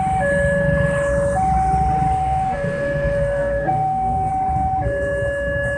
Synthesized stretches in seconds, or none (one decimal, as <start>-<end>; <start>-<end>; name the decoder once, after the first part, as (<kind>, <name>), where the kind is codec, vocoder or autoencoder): 2.2-4.3 (codec, SNAC)